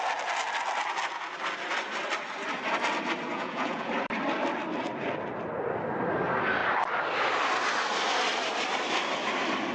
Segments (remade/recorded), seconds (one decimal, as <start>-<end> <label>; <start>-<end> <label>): 0.0-3.3 recorded; 3.3-3.9 remade; 3.9-9.7 recorded